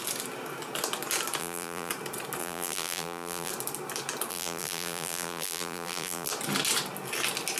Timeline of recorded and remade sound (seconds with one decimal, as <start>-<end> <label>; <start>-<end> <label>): 0.0-1.4 recorded; 1.4-1.9 remade; 1.9-2.4 recorded; 2.4-3.5 remade; 3.5-4.3 recorded; 4.3-6.3 remade; 6.3-7.6 recorded